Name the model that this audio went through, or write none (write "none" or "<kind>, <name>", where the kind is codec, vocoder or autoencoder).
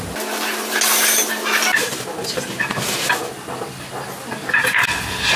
none